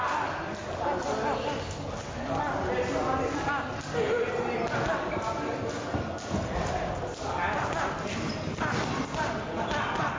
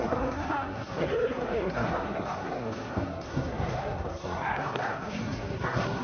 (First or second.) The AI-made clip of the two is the second